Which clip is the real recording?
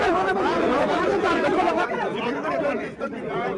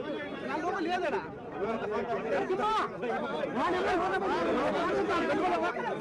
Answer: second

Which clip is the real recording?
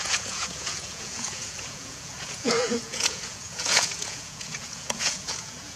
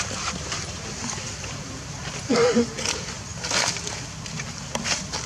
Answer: second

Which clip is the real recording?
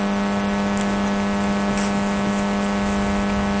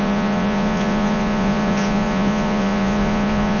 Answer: first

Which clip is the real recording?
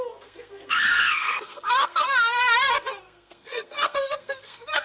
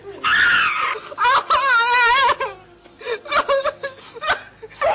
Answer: second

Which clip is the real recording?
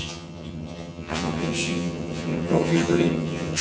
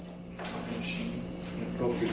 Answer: second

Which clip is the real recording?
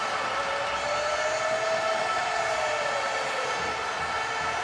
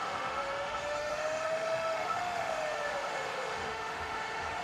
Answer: first